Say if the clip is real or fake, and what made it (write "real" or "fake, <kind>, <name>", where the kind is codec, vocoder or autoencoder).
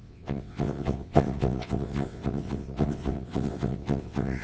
fake, vocoder, WaveNeXt